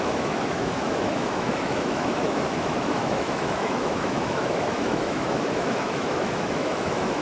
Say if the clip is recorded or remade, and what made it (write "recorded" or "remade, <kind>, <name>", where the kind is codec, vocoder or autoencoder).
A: remade, autoencoder, DAC-VAE